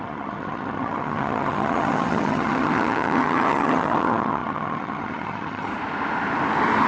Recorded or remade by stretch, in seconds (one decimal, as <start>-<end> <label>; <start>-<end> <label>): 0.0-5.7 remade; 5.7-6.9 recorded